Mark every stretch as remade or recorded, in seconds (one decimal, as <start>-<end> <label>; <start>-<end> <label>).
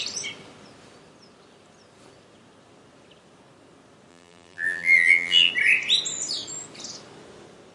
0.0-4.1 recorded; 4.1-5.5 remade; 5.5-7.7 recorded